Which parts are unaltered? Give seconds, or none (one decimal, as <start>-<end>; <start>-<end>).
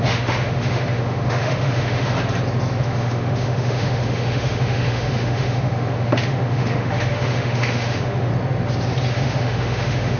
2.1-2.8; 8.3-9.1